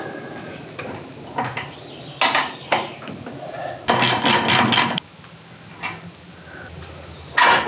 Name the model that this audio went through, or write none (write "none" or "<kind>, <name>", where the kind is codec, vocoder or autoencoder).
none